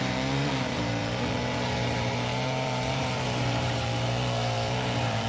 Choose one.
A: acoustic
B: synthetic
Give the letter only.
B